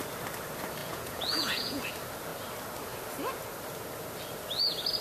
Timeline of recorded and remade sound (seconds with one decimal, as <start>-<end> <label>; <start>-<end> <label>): 0.0-0.8 recorded; 0.8-1.8 remade; 1.8-5.0 recorded